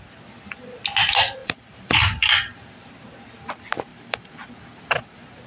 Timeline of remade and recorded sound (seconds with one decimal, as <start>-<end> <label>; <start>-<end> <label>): 0.0-1.4 recorded; 1.4-2.9 remade; 2.9-3.9 recorded; 3.9-4.5 remade; 4.5-5.5 recorded